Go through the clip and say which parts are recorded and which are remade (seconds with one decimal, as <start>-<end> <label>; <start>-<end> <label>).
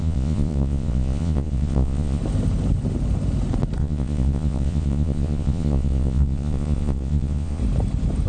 0.0-2.2 remade; 2.2-3.8 recorded; 3.8-7.6 remade; 7.6-8.3 recorded